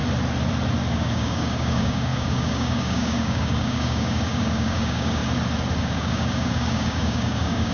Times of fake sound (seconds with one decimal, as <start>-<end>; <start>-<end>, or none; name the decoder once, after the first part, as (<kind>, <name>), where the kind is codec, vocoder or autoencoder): 0.9-5.2 (codec, DAC); 5.8-7.7